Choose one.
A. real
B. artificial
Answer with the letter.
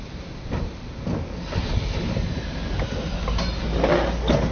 A